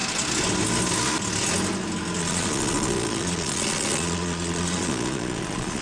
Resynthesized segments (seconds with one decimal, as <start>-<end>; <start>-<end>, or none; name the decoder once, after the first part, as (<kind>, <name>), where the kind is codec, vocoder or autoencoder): 2.2-5.8 (vocoder, Vocos)